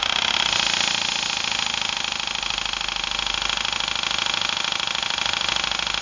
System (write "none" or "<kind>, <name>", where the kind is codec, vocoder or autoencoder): none